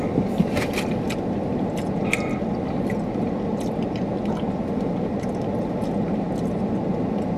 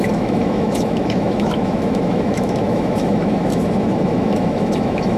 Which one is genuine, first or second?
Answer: first